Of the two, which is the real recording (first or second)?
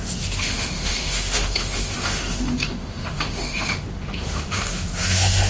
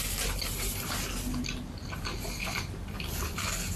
second